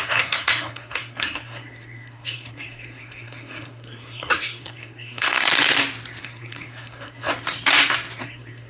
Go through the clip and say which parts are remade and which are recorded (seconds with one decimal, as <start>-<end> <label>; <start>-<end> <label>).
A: 0.0-5.5 remade; 5.5-6.2 recorded; 6.2-7.3 remade; 7.3-8.2 recorded; 8.2-8.7 remade

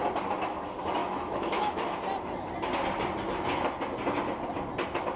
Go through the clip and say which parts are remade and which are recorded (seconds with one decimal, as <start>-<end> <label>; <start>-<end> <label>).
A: 0.0-1.0 recorded; 1.0-1.8 remade; 1.8-5.2 recorded

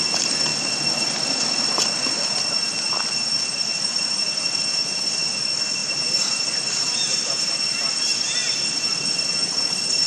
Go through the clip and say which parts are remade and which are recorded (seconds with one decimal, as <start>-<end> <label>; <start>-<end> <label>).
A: 0.0-5.8 recorded; 5.8-7.5 remade; 7.5-10.1 recorded

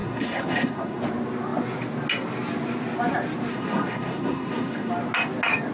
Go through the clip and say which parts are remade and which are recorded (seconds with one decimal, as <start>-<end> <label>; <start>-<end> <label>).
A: 0.0-1.0 remade; 1.0-3.5 recorded; 3.5-4.9 remade; 4.9-5.7 recorded

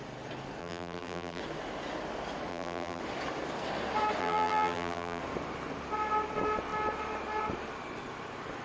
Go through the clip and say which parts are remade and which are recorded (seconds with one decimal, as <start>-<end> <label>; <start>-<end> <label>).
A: 0.0-0.6 recorded; 0.6-1.4 remade; 1.4-2.5 recorded; 2.5-3.0 remade; 3.0-4.2 recorded; 4.2-5.2 remade; 5.2-8.6 recorded

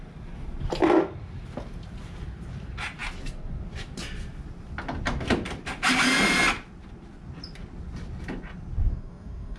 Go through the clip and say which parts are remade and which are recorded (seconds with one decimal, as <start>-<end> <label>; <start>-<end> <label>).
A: 0.0-8.9 recorded; 8.9-9.6 remade

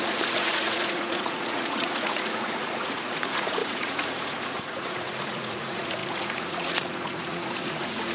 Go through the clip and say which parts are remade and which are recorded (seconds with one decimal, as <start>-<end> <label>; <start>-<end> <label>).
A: 0.0-8.1 remade

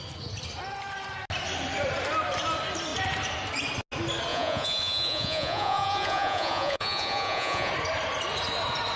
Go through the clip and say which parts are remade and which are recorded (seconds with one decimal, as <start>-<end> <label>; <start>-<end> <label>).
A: 0.0-4.3 recorded; 4.3-7.7 remade; 7.7-9.0 recorded